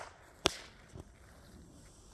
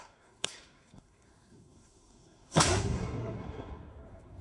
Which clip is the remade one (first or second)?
second